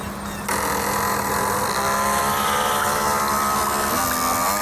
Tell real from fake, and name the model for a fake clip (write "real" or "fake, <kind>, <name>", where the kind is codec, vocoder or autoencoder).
real